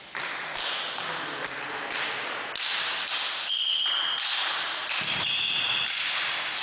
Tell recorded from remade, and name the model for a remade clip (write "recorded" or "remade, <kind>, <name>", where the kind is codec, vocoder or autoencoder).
recorded